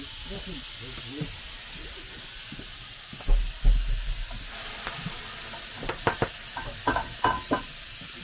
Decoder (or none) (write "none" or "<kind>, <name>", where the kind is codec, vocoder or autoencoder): none